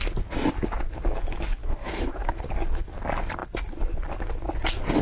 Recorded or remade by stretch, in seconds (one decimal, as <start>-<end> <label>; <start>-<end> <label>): 0.0-1.6 recorded; 1.6-2.4 remade; 2.4-5.0 recorded